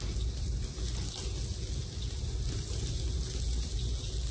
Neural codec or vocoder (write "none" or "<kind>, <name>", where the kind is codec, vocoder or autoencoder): none